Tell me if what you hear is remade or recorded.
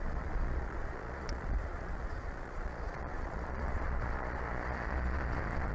remade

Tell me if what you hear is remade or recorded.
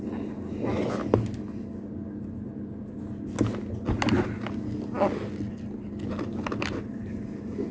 recorded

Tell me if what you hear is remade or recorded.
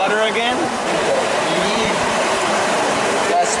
remade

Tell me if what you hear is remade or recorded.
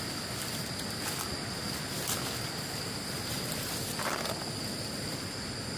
recorded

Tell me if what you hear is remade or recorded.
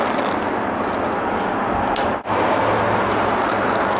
recorded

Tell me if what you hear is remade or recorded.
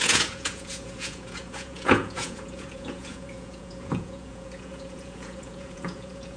remade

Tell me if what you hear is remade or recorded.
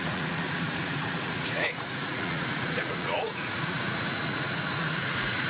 remade